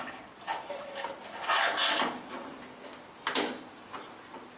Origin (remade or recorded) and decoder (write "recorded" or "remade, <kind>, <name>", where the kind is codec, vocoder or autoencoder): recorded